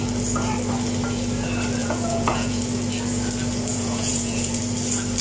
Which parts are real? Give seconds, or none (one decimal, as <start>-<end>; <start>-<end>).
0.0-1.8; 2.6-3.7; 4.6-5.2